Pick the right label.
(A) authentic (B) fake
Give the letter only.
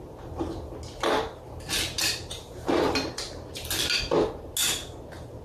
A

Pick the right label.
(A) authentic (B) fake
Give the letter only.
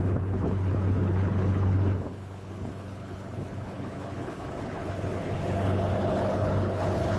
B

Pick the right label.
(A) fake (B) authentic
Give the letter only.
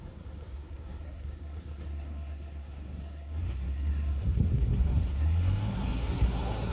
A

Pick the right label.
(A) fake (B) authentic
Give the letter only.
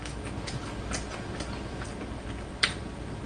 B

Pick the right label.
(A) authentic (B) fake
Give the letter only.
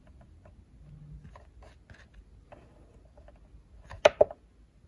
A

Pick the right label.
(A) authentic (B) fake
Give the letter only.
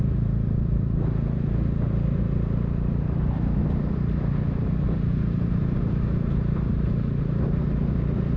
B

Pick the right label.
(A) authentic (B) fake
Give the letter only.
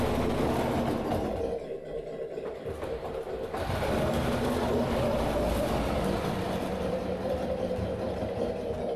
A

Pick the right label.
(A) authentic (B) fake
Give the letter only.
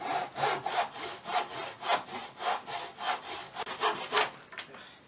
A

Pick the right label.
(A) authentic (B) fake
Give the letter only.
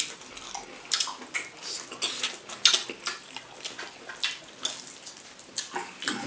A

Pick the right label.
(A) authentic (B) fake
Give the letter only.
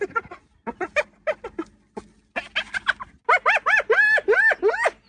A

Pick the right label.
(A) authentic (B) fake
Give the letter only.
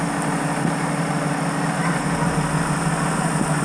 A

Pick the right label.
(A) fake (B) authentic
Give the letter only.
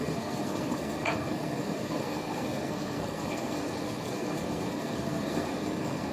A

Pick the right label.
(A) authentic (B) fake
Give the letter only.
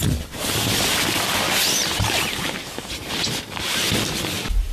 A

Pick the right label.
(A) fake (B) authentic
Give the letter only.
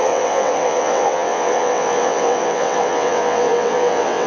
A